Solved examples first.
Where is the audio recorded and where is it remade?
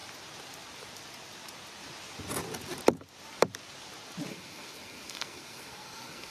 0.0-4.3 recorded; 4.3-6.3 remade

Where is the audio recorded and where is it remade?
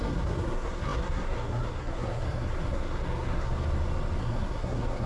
0.0-3.5 remade; 3.5-4.2 recorded; 4.2-5.1 remade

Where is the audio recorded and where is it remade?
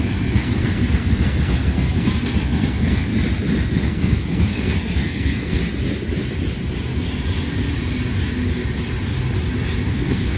0.0-3.1 remade; 3.1-3.7 recorded; 3.7-5.6 remade; 5.6-9.9 recorded; 9.9-10.4 remade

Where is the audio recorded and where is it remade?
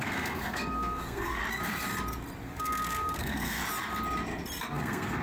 0.0-1.4 remade; 1.4-2.4 recorded; 2.4-3.6 remade; 3.6-4.6 recorded; 4.6-5.2 remade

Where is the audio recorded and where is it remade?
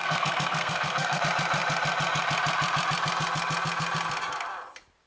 0.0-1.2 remade; 1.2-5.1 recorded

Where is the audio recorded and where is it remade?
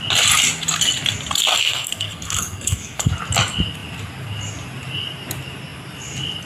0.0-1.5 recorded; 1.5-3.1 remade; 3.1-6.5 recorded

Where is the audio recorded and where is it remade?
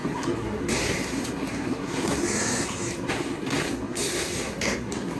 0.0-5.2 remade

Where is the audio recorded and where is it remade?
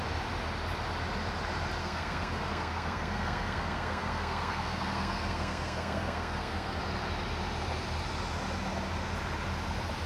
0.0-1.8 recorded; 1.8-6.8 remade; 6.8-10.1 recorded